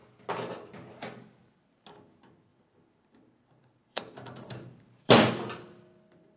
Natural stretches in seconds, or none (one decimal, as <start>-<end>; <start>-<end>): 0.0-2.5; 5.3-6.4